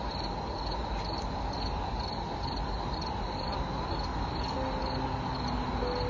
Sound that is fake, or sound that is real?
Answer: real